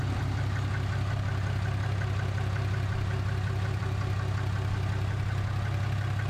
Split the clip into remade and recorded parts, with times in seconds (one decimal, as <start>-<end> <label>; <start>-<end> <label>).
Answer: 0.0-6.3 recorded